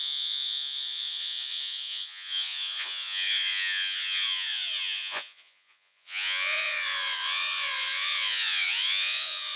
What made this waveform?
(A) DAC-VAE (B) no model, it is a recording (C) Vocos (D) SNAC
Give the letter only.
C